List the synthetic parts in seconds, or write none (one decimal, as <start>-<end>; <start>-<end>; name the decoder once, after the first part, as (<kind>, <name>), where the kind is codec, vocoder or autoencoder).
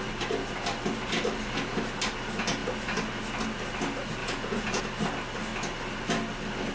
4.2-4.8 (vocoder, Vocos)